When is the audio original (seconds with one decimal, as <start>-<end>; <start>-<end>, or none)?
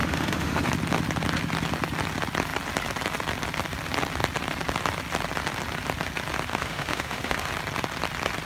0.7-6.5; 7.5-8.5